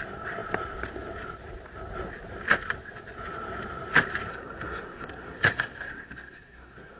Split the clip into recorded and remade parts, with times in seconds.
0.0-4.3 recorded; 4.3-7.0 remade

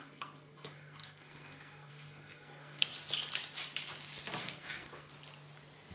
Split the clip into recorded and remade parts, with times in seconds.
0.0-2.9 remade; 2.9-4.4 recorded; 4.4-5.1 remade; 5.1-5.9 recorded

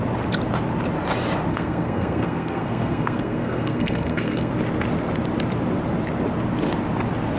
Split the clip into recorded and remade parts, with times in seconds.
0.0-1.5 recorded; 1.5-4.5 remade; 4.5-7.4 recorded

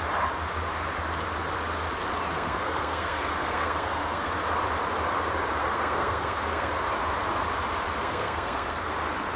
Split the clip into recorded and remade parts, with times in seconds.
0.0-2.3 recorded; 2.3-4.3 remade; 4.3-5.6 recorded; 5.6-6.7 remade; 6.7-8.0 recorded; 8.0-8.9 remade; 8.9-9.4 recorded

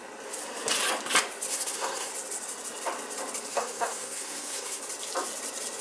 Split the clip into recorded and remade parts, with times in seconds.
0.0-1.5 recorded; 1.5-2.1 remade; 2.1-3.5 recorded; 3.5-4.8 remade; 4.8-5.8 recorded

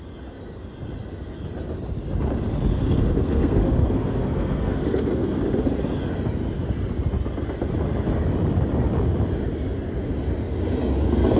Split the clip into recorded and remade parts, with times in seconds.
0.0-2.7 recorded; 2.7-5.4 remade; 5.4-11.4 recorded

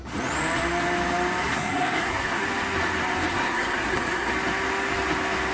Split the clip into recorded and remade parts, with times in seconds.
0.0-1.4 recorded; 1.4-2.4 remade; 2.4-3.3 recorded; 3.3-4.3 remade; 4.3-5.5 recorded

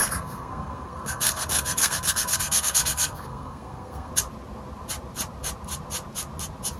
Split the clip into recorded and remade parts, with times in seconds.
0.0-4.1 remade; 4.1-6.8 recorded